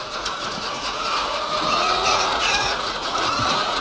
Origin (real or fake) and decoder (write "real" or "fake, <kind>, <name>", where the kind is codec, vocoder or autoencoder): fake, vocoder, Vocos